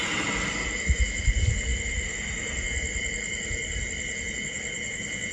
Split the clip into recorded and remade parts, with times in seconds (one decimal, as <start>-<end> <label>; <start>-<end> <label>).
0.0-5.3 recorded